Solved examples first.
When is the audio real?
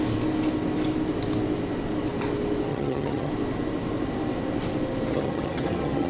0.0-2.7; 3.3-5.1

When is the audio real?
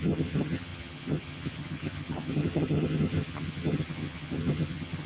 none